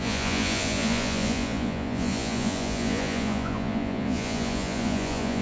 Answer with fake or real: fake